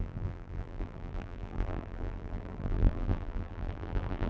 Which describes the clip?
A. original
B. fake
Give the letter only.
B